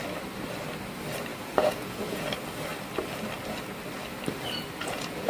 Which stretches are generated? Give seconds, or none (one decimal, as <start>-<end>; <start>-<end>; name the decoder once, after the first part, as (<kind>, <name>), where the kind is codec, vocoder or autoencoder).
1.3-2.3 (vocoder, Vocos); 4.8-5.3